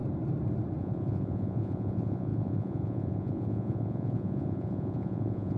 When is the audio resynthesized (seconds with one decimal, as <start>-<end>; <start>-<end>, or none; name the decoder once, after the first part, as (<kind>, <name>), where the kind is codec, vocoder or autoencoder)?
0.8-5.6 (vocoder, Vocos)